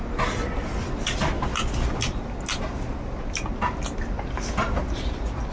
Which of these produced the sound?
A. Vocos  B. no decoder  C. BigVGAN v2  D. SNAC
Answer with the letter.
B